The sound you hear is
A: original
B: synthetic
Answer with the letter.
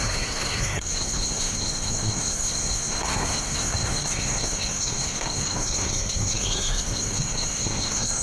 B